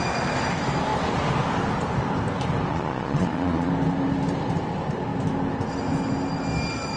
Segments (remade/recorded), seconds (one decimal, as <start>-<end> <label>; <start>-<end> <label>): 0.0-2.7 recorded; 2.7-3.7 remade; 3.7-7.0 recorded